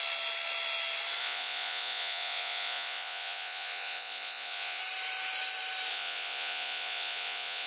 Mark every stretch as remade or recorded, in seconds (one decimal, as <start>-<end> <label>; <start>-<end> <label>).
0.0-1.2 recorded; 1.2-4.8 remade; 4.8-5.9 recorded; 5.9-7.7 remade